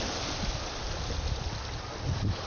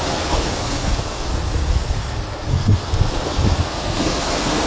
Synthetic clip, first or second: second